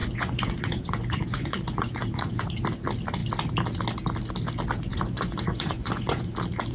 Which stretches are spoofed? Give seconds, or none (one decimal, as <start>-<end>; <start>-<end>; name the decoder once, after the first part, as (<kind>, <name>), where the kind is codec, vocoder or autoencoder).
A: 0.0-2.4 (vocoder, Vocos); 4.9-6.3